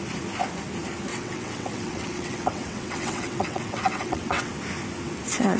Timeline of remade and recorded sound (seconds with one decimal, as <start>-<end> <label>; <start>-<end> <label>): 0.0-1.1 recorded; 1.1-4.5 remade; 4.5-5.6 recorded